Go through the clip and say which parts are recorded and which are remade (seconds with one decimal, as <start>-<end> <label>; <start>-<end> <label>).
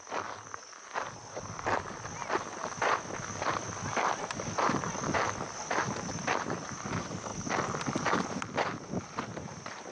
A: 0.0-9.9 recorded